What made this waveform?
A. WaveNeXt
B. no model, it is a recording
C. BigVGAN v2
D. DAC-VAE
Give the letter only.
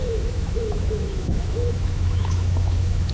D